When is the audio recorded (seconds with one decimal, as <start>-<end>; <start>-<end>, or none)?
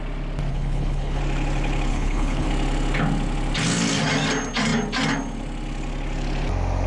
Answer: 0.0-0.5; 1.2-1.9; 2.5-6.9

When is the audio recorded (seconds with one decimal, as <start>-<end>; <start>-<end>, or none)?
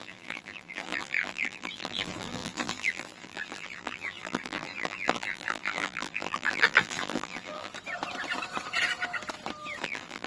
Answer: 7.7-9.8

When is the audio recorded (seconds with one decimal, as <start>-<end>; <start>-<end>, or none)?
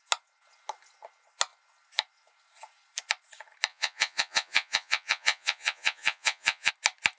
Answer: 0.0-3.7; 6.7-7.2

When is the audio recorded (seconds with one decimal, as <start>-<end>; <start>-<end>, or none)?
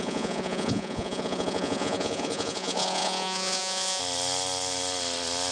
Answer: 4.0-5.5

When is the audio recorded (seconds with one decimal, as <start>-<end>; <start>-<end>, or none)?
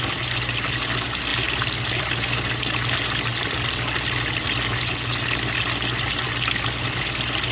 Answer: 0.0-7.5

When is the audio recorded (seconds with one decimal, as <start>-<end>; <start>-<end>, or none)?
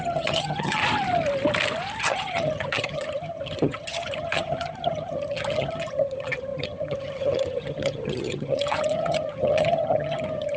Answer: 0.8-2.0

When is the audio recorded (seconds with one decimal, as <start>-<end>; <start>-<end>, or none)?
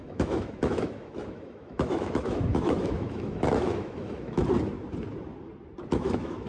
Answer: 4.4-5.9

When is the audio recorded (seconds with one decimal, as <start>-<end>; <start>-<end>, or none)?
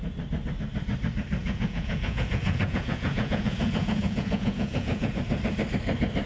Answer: 0.0-1.4; 5.2-6.3